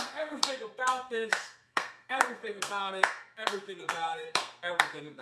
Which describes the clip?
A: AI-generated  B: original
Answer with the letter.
A